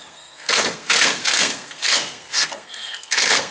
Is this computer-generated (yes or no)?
yes